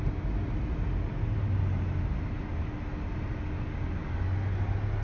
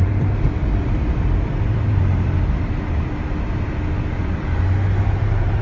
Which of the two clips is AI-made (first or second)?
second